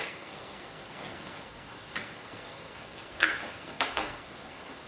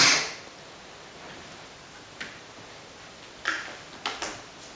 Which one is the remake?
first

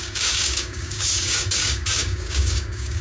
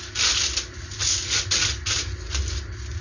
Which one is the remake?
first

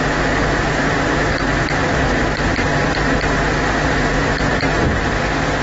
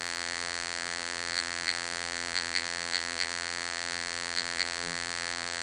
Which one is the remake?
second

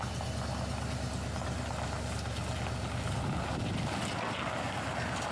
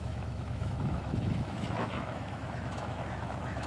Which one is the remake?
second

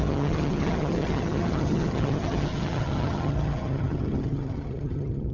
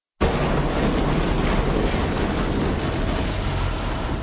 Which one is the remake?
first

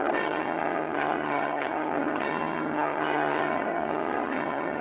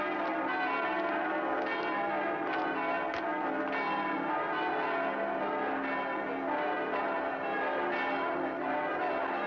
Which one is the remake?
first